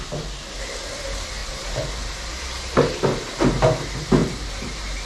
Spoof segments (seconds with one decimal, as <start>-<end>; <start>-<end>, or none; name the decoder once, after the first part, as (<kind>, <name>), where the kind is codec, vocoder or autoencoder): 1.4-3.2 (vocoder, BigVGAN v2); 4.2-5.1